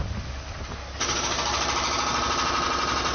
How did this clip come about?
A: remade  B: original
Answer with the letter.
B